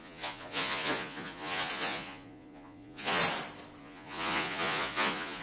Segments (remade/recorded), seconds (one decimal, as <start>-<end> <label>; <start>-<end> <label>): 0.0-3.2 remade; 3.2-3.8 recorded; 3.8-5.4 remade